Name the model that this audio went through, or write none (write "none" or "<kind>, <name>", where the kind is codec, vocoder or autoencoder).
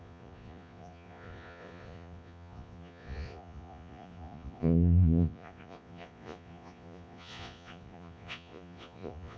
vocoder, Vocos